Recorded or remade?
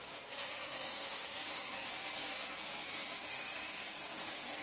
remade